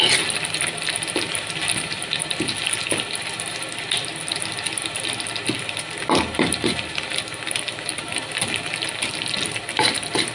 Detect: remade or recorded recorded